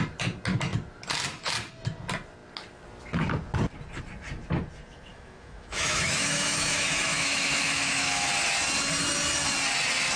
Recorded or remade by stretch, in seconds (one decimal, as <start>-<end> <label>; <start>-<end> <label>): 0.0-5.1 recorded; 5.1-8.3 remade; 8.3-10.2 recorded